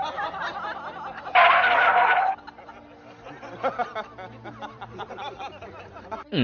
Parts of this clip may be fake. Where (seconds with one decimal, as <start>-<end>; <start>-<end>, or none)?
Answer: none